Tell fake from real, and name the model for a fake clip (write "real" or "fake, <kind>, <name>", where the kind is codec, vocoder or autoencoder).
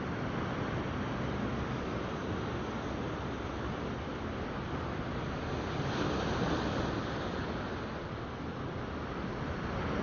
real